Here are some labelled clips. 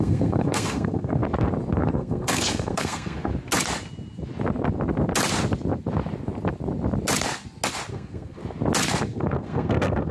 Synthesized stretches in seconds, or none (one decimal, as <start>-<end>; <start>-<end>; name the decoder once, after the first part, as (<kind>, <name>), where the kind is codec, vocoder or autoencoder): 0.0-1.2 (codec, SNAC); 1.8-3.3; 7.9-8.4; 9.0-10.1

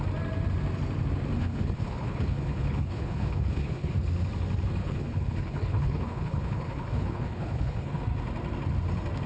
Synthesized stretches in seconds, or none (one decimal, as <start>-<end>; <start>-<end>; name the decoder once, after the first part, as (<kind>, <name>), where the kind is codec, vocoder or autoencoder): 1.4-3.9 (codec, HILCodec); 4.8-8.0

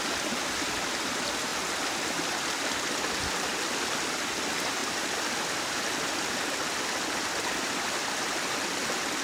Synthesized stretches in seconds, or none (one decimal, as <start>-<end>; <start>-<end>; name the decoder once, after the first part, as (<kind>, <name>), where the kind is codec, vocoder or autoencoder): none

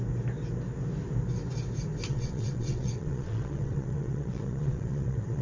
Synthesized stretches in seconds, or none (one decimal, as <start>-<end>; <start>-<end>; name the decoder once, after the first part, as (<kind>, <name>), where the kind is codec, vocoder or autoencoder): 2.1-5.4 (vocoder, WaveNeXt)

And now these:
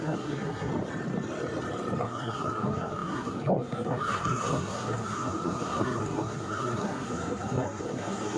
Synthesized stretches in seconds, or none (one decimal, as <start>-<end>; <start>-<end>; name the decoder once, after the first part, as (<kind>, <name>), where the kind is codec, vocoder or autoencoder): 0.0-0.7 (codec, SNAC); 2.0-8.4